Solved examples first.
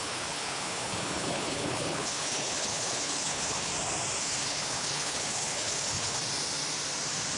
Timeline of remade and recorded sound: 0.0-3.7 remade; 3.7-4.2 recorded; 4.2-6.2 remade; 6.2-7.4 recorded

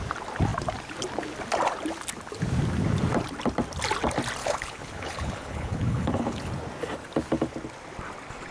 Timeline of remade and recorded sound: 0.0-4.4 recorded; 4.4-6.5 remade; 6.5-8.5 recorded

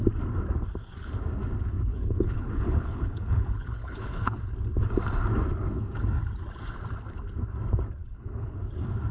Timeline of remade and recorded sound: 0.0-1.9 recorded; 1.9-4.4 remade; 4.4-8.0 recorded; 8.0-8.6 remade; 8.6-9.1 recorded

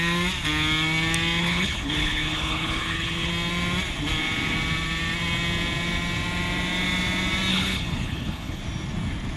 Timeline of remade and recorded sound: 0.0-1.4 recorded; 1.4-3.3 remade; 3.3-7.5 recorded; 7.5-8.6 remade; 8.6-9.4 recorded

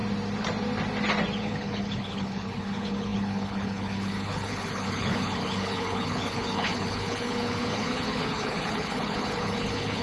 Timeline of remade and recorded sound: 0.0-1.4 recorded; 1.4-10.0 remade

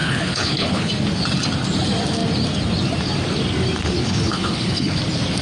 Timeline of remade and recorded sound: 0.0-0.9 remade; 0.9-4.0 recorded; 4.0-5.0 remade; 5.0-5.4 recorded

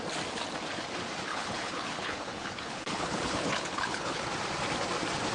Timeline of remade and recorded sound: 0.0-1.3 recorded; 1.3-4.3 remade; 4.3-5.3 recorded